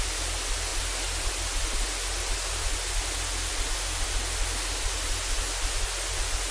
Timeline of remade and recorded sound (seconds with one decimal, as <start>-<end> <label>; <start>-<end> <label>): 0.0-6.5 recorded